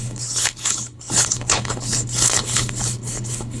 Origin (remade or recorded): remade